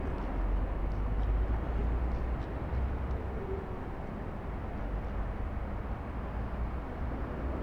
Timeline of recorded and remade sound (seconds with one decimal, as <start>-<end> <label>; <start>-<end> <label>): 0.0-7.6 recorded